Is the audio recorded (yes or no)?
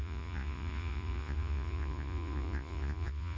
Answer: no